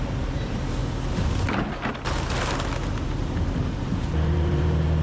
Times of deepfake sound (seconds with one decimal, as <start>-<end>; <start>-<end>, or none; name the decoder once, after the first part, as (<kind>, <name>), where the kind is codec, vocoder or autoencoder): 0.0-0.8 (vocoder, BigVGAN v2); 3.8-5.0